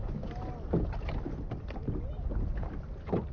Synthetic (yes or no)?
no